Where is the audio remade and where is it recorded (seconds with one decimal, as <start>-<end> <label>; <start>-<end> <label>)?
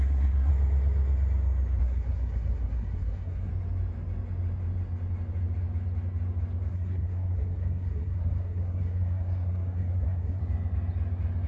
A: 0.0-0.5 remade; 0.5-1.8 recorded; 1.8-3.5 remade; 3.5-6.7 recorded; 6.7-10.4 remade; 10.4-11.5 recorded